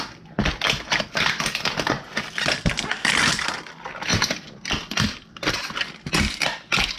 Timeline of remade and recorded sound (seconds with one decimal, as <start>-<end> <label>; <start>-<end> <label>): 0.0-7.0 recorded

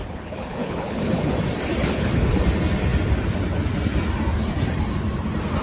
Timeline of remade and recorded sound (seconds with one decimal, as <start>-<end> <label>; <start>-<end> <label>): 0.0-1.3 remade; 1.3-1.8 recorded; 1.8-2.4 remade; 2.4-5.6 recorded